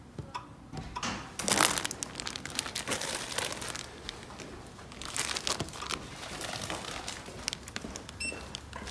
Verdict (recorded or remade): recorded